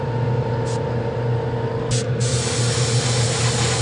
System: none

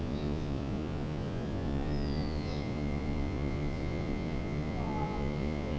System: vocoder, Vocos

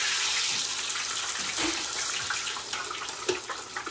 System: none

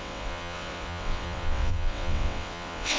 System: vocoder, WaveNeXt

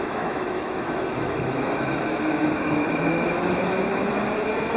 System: autoencoder, DAC-VAE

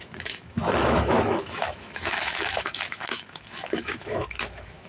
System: autoencoder, DAC-VAE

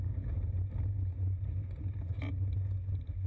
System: none